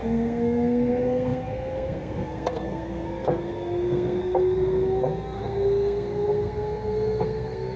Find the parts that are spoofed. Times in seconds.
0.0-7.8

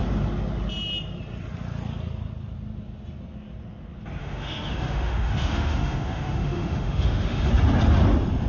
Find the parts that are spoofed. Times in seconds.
4.2-7.5

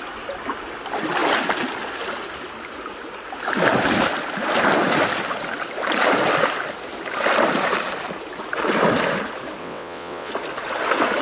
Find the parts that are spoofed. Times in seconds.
9.6-10.3

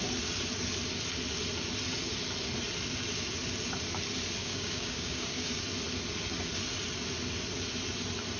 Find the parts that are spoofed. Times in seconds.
4.4-5.6

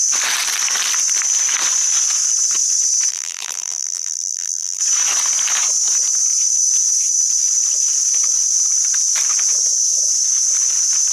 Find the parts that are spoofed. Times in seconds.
3.1-4.8

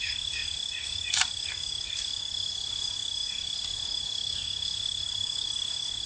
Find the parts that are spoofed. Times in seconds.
0.0-6.1